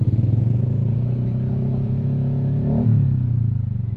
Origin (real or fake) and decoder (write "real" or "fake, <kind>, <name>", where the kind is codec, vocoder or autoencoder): fake, vocoder, Vocos